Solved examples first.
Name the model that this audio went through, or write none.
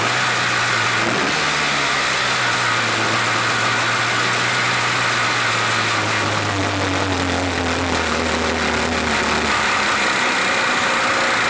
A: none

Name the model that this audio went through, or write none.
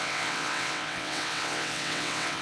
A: vocoder, WaveNeXt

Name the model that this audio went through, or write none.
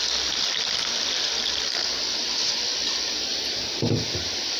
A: none